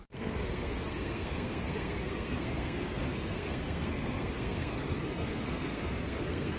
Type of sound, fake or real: fake